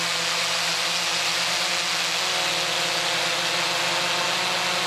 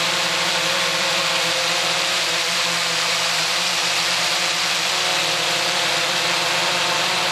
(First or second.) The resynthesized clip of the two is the second